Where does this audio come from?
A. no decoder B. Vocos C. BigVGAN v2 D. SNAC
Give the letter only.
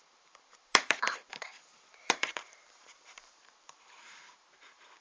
C